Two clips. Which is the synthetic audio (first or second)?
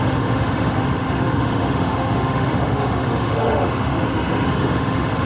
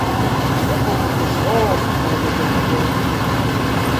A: first